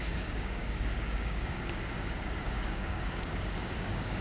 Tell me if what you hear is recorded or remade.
remade